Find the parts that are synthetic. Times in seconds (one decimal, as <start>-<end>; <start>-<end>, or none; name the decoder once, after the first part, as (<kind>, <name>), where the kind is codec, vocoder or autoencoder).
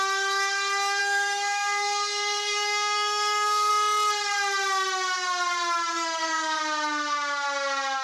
1.0-3.7 (codec, SNAC); 5.9-6.6